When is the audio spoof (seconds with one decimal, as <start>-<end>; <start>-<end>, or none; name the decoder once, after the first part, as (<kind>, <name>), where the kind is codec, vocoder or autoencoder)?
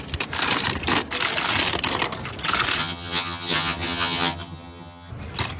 2.8-5.1 (vocoder, HiFi-GAN)